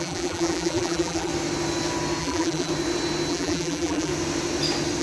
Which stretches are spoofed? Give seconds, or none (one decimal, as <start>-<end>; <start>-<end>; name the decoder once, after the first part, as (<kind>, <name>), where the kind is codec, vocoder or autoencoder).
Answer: 0.0-1.3 (vocoder, BigVGAN v2); 2.2-2.7; 3.3-4.1